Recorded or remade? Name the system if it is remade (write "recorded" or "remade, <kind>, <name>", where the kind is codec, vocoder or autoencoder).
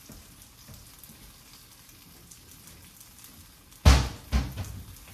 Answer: recorded